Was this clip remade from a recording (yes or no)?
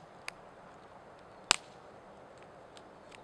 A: no